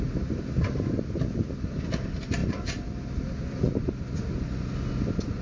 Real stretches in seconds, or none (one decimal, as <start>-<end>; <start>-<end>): 0.0-5.4